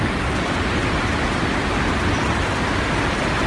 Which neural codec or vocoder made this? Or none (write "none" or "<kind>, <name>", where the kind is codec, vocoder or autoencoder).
none